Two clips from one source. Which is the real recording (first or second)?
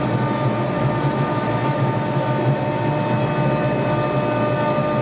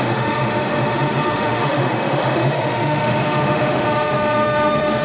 first